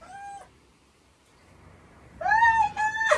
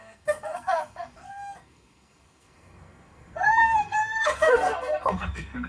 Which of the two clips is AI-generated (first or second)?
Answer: second